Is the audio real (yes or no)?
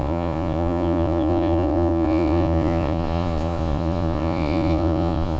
no